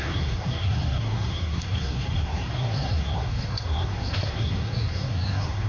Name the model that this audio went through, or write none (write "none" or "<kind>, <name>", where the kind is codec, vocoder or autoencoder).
codec, SNAC